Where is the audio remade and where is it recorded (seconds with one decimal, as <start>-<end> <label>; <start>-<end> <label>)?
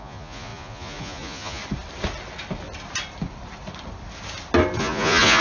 0.0-1.6 remade; 1.6-4.8 recorded; 4.8-5.4 remade